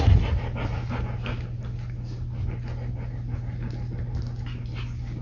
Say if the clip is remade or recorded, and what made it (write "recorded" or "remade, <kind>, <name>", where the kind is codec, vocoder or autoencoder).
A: recorded